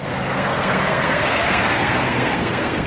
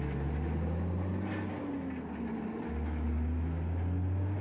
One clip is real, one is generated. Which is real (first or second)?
second